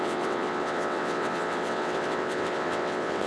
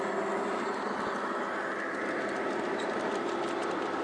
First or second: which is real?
second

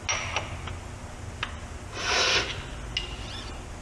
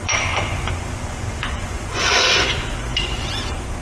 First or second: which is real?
first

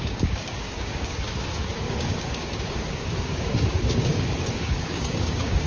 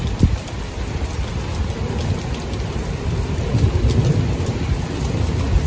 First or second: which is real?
second